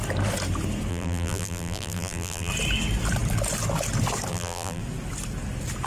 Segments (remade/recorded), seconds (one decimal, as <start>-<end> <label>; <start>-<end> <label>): 0.0-0.9 recorded; 0.9-2.5 remade; 2.5-4.3 recorded; 4.3-4.8 remade; 4.8-5.9 recorded